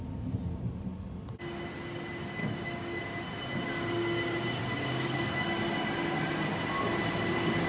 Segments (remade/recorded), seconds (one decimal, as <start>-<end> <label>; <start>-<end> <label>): 0.0-2.4 recorded; 2.4-3.0 remade; 3.0-4.6 recorded; 4.6-5.6 remade; 5.6-7.7 recorded